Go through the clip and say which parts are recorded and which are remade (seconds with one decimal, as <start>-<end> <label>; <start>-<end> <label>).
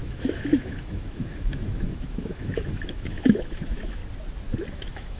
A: 0.0-4.0 remade; 4.0-4.7 recorded; 4.7-5.2 remade